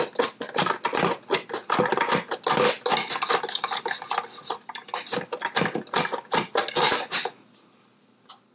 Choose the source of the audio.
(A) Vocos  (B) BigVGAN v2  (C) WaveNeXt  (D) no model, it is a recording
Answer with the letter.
D